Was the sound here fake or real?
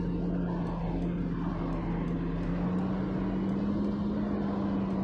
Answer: real